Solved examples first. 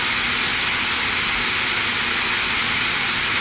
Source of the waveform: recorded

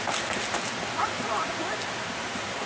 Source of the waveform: recorded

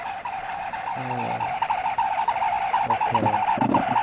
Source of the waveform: recorded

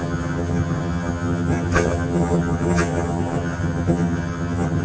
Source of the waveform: remade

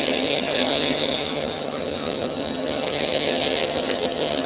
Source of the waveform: remade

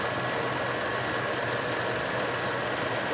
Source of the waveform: recorded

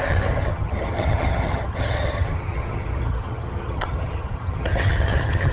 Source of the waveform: remade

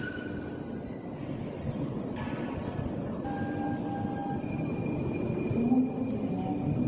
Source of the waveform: recorded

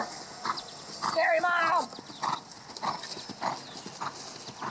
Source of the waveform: recorded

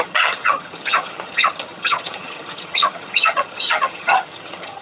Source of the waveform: remade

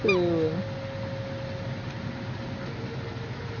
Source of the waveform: recorded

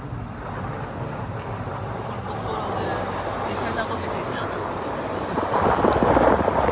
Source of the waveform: recorded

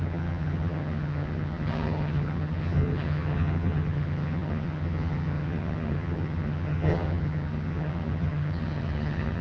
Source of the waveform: remade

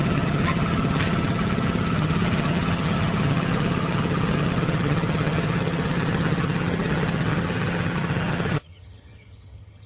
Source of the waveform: remade